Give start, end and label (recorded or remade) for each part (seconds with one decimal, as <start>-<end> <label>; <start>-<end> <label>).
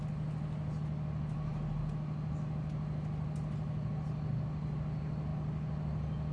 0.0-6.3 recorded